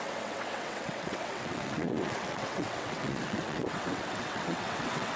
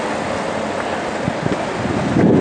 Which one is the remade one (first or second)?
first